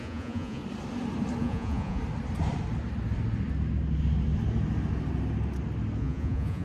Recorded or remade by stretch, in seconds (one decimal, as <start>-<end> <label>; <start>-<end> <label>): 0.0-0.6 remade; 0.6-1.4 recorded; 1.4-2.0 remade; 2.0-6.0 recorded; 6.0-6.6 remade